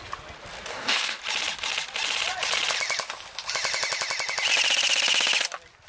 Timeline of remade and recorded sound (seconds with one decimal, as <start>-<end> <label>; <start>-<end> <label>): 0.0-0.7 recorded; 0.7-1.2 remade; 1.2-5.9 recorded